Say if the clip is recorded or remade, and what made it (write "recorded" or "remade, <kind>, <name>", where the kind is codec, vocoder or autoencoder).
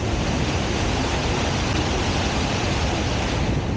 recorded